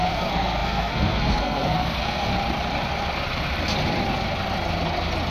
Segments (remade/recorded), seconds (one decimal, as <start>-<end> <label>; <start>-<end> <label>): 0.0-2.3 remade; 2.3-5.3 recorded